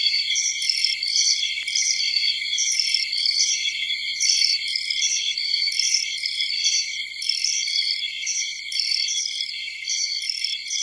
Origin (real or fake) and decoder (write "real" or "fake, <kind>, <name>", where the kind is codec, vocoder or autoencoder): fake, vocoder, BigVGAN v2